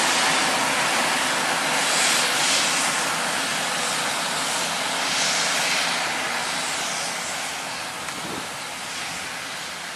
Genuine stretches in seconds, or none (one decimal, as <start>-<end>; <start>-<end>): 0.0-3.5; 5.6-6.4; 6.9-10.0